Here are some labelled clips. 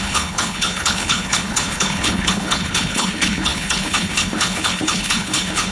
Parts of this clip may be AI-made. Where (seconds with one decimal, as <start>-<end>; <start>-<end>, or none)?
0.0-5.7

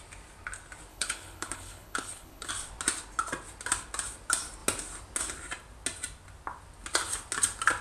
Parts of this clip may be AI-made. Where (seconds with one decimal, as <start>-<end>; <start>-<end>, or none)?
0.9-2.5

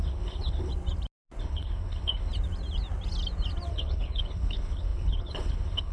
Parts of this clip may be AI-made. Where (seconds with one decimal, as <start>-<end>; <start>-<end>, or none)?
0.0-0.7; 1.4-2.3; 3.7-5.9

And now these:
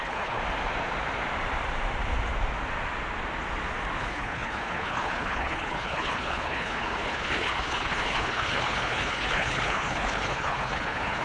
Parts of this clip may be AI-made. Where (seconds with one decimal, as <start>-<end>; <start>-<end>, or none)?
0.0-0.4; 4.0-11.2

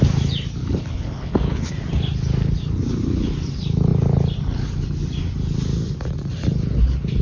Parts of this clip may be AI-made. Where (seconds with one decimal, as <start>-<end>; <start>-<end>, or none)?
0.6-1.7